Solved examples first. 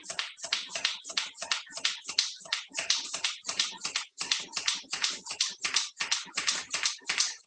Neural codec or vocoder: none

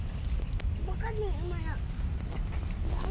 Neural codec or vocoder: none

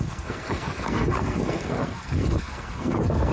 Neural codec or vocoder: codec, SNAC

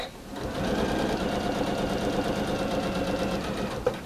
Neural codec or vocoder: none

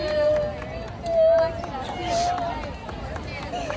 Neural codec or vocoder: none